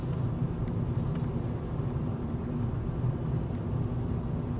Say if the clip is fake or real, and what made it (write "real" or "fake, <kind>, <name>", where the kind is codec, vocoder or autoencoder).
real